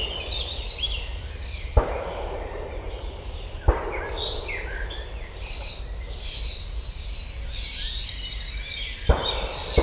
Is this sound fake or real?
fake